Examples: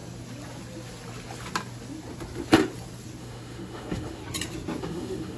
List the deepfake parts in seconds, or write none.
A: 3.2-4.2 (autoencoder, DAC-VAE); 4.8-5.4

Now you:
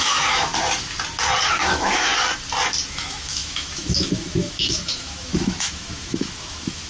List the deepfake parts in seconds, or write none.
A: 0.0-0.5 (autoencoder, DAC-VAE); 1.5-2.1; 2.9-6.9

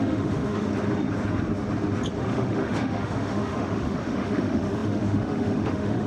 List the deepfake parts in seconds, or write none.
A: 0.0-0.7 (autoencoder, DAC-VAE); 2.2-6.1

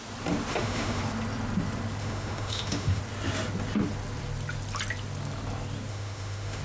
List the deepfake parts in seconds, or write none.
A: 0.5-1.0 (autoencoder, DAC-VAE); 2.0-3.0; 5.9-6.6

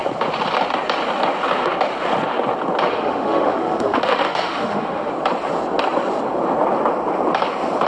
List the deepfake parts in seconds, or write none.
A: 2.9-5.1 (autoencoder, DAC-VAE)

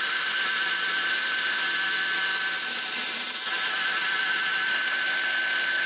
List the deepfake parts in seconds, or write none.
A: 0.0-0.4 (autoencoder, DAC-VAE); 1.1-1.6; 4.7-5.9

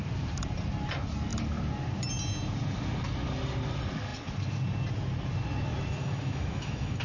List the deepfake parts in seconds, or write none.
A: 6.0-7.0 (autoencoder, DAC-VAE)